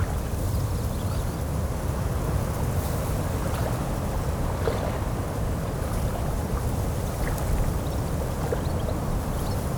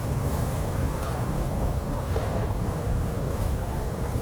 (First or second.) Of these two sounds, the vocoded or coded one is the second